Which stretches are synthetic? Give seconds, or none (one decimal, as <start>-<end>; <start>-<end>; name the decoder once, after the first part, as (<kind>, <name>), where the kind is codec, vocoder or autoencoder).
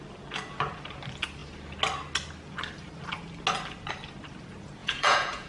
4.8-5.5 (vocoder, Vocos)